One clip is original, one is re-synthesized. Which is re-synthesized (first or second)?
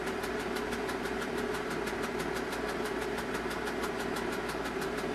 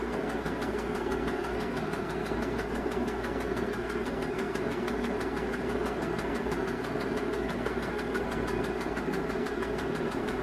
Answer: second